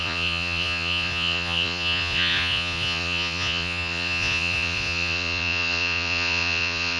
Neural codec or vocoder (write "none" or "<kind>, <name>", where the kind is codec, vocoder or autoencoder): vocoder, Vocos